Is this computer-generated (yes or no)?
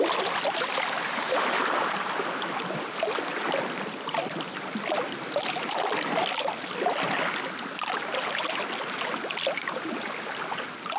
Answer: no